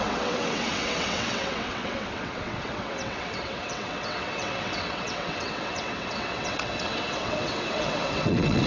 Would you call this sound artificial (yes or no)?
yes